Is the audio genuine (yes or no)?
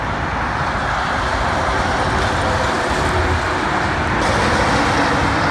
yes